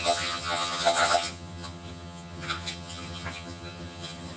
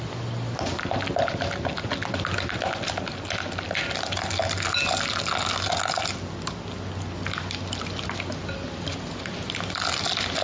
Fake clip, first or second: first